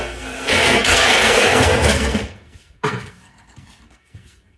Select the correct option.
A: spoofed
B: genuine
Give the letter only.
A